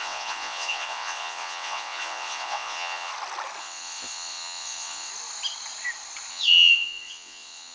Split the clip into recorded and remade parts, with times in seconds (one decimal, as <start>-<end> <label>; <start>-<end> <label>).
0.0-3.1 remade; 3.1-3.6 recorded; 3.6-5.1 remade; 5.1-6.3 recorded; 6.3-7.7 remade